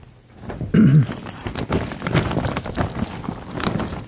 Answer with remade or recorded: recorded